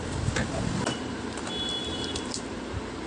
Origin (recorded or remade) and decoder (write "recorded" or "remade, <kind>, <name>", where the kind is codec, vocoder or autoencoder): recorded